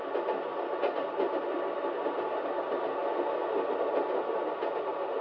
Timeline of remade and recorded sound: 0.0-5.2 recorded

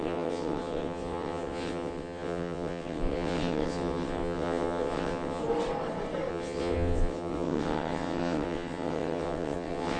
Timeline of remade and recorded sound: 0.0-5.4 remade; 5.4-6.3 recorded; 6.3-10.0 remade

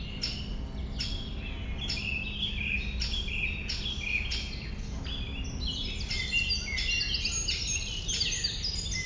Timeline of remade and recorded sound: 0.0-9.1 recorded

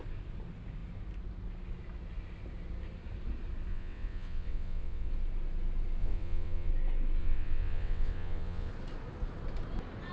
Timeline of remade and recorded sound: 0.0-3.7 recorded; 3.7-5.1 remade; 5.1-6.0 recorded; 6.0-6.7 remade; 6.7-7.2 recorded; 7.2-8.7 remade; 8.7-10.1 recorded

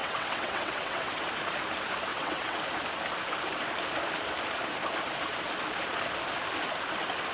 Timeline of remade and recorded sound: 0.0-1.2 remade; 1.2-2.1 recorded; 2.1-2.6 remade; 2.6-7.3 recorded

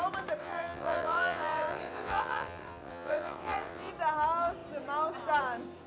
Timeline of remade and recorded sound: 0.0-0.4 recorded; 0.4-3.9 remade; 3.9-5.9 recorded

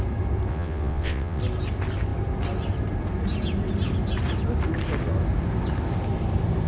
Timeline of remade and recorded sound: 0.0-0.5 recorded; 0.5-1.4 remade; 1.4-6.7 recorded

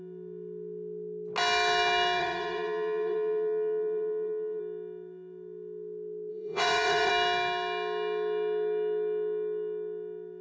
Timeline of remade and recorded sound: 0.0-2.2 recorded; 2.2-4.6 remade; 4.6-6.3 recorded; 6.3-7.1 remade; 7.1-10.4 recorded